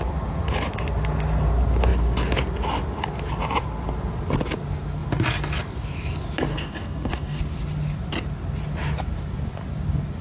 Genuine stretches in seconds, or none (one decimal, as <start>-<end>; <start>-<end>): 0.0-6.5; 7.4-10.2